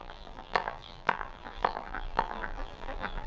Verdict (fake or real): fake